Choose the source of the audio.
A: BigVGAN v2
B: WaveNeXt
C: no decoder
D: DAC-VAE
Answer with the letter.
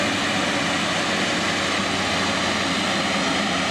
C